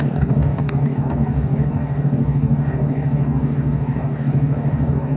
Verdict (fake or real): fake